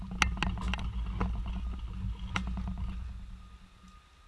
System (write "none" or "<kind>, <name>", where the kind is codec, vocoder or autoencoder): none